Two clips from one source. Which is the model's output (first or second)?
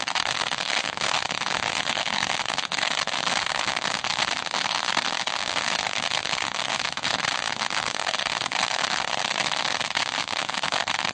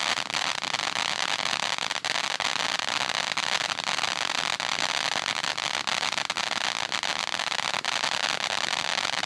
first